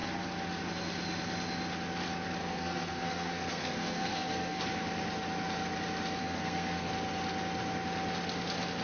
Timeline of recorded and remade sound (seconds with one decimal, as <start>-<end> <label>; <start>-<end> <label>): 0.0-2.4 recorded; 2.4-4.6 remade; 4.6-6.2 recorded; 6.2-6.9 remade; 6.9-8.8 recorded